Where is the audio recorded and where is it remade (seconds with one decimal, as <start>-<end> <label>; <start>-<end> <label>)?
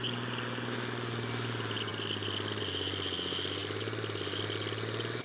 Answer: 0.0-5.2 recorded